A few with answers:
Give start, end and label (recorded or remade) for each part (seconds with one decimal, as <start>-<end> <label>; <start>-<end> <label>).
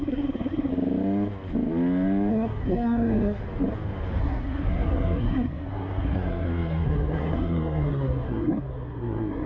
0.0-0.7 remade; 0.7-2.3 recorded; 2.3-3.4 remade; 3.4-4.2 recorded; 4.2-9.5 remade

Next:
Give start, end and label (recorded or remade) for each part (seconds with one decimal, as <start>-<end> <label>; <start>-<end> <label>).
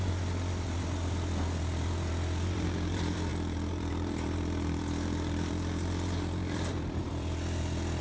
0.0-8.0 remade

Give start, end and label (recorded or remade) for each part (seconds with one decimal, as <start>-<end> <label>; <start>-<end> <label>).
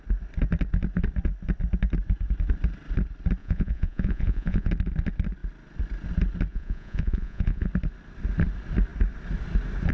0.0-3.4 recorded; 3.4-4.7 remade; 4.7-6.5 recorded; 6.5-7.7 remade; 7.7-9.9 recorded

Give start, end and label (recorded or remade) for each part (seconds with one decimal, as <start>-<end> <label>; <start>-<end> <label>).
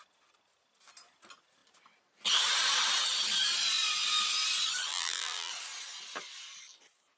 0.0-4.9 recorded; 4.9-5.5 remade; 5.5-7.2 recorded